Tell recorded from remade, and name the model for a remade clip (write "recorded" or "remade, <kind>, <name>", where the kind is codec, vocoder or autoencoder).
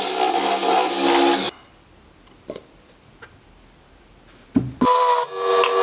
recorded